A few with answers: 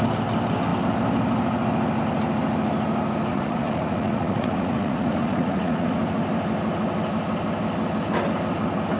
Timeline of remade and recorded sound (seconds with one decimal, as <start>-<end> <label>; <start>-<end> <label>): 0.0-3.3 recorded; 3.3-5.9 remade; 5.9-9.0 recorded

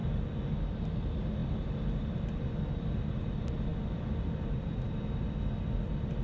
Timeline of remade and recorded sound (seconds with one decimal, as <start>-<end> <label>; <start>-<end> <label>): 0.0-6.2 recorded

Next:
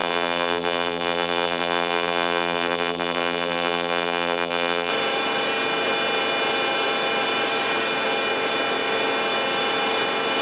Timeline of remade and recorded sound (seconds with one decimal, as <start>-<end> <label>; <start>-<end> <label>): 0.0-4.9 remade; 4.9-10.4 recorded